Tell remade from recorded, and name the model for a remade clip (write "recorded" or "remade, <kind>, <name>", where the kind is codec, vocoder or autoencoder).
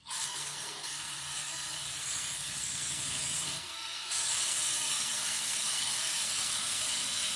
remade, codec, SNAC